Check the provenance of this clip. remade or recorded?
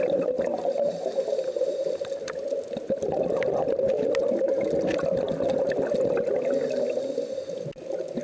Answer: recorded